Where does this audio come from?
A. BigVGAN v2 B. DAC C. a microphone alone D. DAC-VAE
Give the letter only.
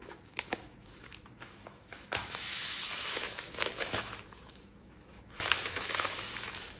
D